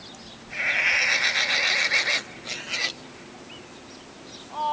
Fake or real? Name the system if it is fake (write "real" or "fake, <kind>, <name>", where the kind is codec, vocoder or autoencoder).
real